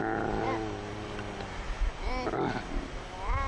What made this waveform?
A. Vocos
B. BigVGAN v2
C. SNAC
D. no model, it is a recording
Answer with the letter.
D